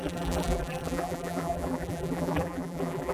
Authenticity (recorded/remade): remade